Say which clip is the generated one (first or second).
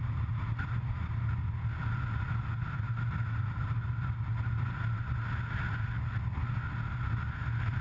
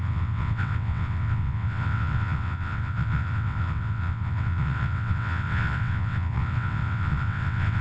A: second